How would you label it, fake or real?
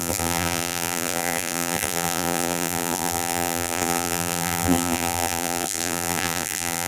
fake